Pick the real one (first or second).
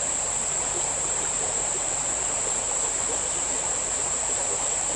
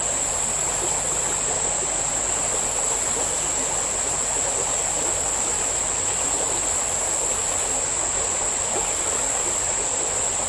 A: second